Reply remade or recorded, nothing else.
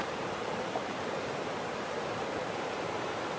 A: remade